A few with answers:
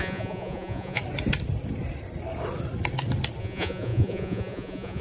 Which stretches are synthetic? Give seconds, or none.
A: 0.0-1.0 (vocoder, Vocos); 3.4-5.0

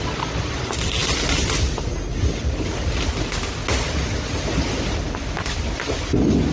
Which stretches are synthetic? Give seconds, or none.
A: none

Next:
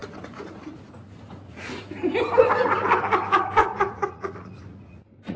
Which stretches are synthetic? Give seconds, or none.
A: 0.0-1.8 (vocoder, Vocos); 3.6-5.4

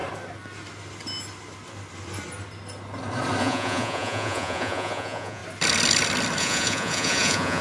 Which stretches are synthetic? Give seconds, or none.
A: 3.4-5.4 (vocoder, Vocos); 6.4-7.6

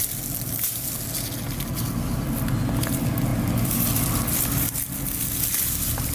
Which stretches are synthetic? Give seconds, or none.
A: none